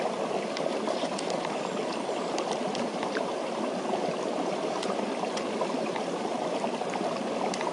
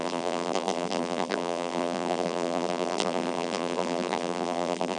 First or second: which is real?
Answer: first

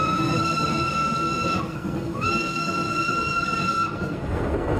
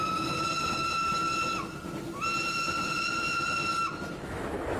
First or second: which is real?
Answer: second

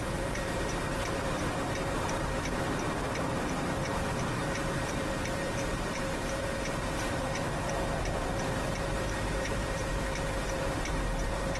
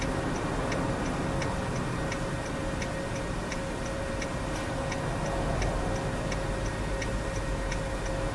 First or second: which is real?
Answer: second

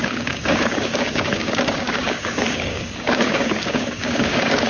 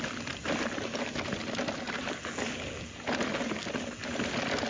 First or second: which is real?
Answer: second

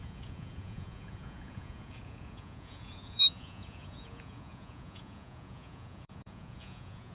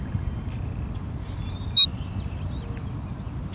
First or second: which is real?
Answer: second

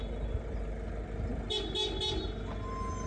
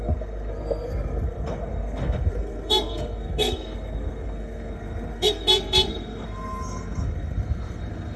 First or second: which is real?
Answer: first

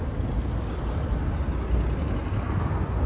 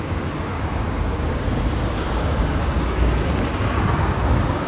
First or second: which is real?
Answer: first